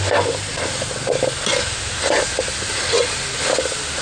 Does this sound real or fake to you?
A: real